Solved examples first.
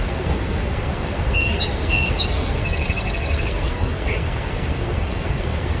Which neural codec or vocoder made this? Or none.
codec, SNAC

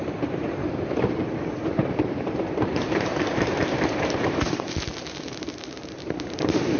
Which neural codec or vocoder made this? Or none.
vocoder, BigVGAN v2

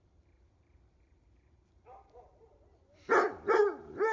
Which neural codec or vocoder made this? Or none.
vocoder, BigVGAN v2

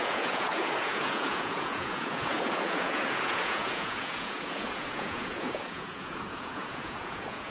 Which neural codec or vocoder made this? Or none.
vocoder, Vocos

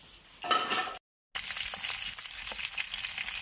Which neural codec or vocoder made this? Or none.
none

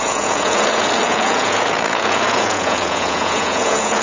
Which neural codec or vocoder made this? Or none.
vocoder, Vocos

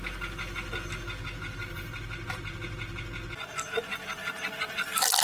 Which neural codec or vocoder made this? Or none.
none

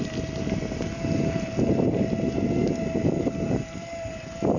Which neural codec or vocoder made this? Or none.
none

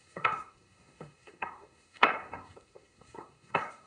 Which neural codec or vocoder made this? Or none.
codec, SNAC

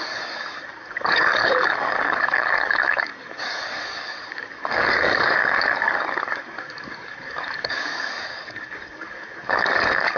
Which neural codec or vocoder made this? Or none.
codec, DAC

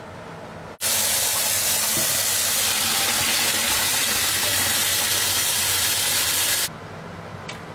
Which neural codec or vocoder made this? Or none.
none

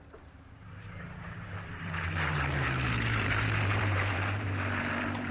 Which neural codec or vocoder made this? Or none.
vocoder, BigVGAN v2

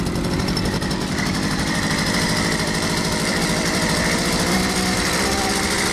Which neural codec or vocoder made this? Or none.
vocoder, BigVGAN v2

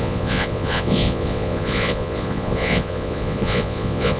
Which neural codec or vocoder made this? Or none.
vocoder, Vocos